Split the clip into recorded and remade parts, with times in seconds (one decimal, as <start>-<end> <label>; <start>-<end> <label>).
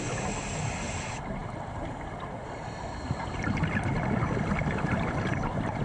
0.0-5.8 recorded